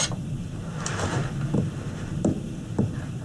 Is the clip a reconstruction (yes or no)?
yes